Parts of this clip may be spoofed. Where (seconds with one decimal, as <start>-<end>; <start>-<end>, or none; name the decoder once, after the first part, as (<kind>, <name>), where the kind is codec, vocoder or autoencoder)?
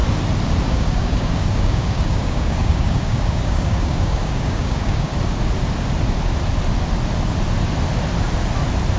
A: 0.6-5.1 (codec, DAC)